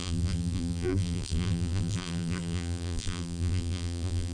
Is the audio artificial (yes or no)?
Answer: yes